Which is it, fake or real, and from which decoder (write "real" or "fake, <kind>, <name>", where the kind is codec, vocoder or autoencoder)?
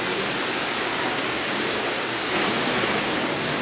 fake, codec, DAC